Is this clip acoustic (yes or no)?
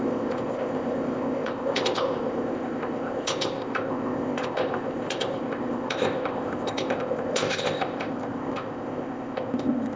no